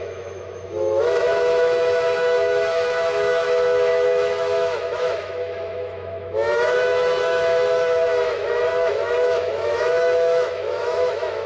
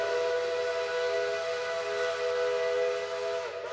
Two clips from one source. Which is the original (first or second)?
second